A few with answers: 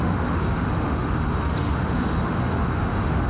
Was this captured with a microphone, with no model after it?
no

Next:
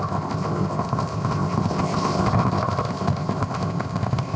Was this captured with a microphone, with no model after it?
no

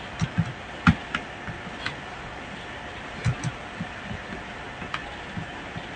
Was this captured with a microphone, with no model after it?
yes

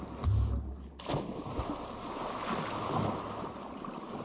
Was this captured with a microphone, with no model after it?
yes